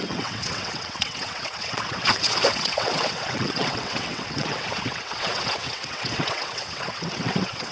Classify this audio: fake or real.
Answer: fake